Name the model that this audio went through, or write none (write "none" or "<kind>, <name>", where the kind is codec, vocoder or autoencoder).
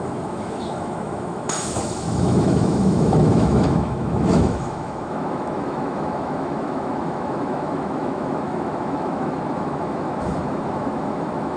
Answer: autoencoder, DAC-VAE